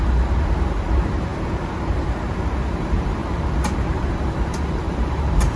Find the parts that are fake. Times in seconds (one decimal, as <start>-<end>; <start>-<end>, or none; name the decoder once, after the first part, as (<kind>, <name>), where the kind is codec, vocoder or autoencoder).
0.0-5.6 (vocoder, BigVGAN v2)